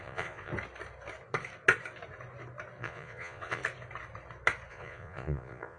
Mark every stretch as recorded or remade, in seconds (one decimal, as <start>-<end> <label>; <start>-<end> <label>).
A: 0.0-0.5 remade; 0.5-2.8 recorded; 2.8-3.6 remade; 3.6-4.7 recorded; 4.7-5.8 remade